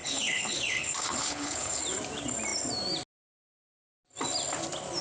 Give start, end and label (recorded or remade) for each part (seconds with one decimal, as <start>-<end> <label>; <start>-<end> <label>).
0.0-1.8 remade; 1.8-5.0 recorded